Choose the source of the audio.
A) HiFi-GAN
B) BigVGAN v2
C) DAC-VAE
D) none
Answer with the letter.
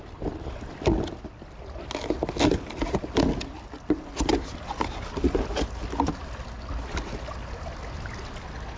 D